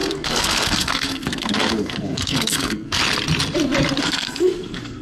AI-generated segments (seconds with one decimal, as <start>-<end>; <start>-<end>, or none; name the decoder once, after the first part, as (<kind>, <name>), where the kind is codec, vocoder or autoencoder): 0.0-3.0 (codec, SNAC); 4.0-5.0